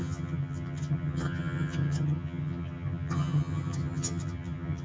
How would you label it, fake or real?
fake